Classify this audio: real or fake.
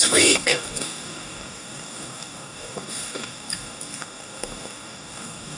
fake